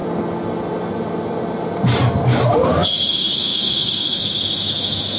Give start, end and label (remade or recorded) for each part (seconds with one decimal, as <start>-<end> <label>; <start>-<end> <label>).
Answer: 0.0-3.1 recorded; 3.1-5.2 remade